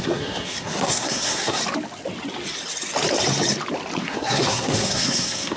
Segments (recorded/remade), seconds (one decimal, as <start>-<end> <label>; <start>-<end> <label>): 0.0-1.6 remade; 1.6-4.0 recorded; 4.0-5.6 remade